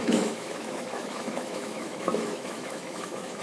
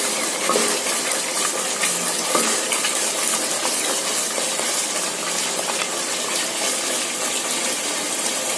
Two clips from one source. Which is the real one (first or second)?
second